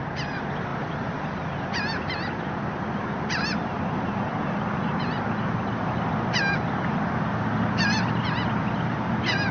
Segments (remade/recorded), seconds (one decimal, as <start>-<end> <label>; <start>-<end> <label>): 0.0-0.7 recorded; 0.7-1.7 remade; 1.7-9.5 recorded